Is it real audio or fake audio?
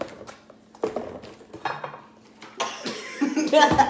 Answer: real